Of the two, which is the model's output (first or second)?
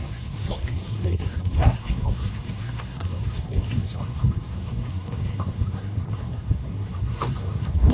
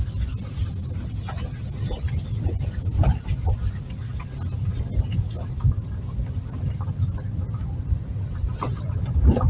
first